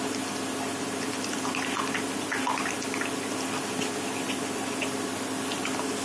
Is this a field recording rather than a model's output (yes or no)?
yes